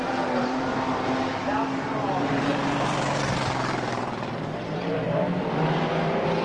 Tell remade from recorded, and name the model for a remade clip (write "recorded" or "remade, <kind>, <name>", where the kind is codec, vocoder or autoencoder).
remade, vocoder, BigVGAN v2